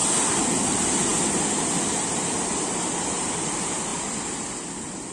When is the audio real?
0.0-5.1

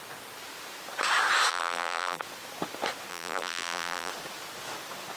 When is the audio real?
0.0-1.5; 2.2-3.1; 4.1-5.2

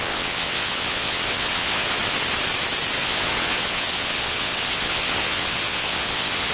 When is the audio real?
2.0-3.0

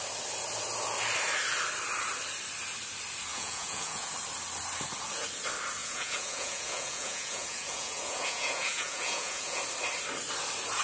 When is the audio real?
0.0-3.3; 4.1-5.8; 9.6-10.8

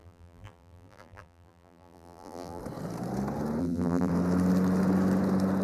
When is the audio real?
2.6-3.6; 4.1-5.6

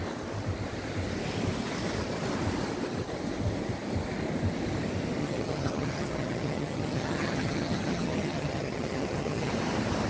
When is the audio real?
0.0-5.2; 9.5-10.1